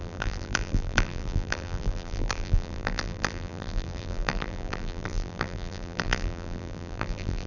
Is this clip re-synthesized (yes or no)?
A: yes